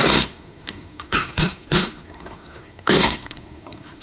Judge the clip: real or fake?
fake